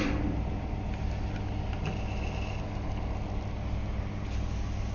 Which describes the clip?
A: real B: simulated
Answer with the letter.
A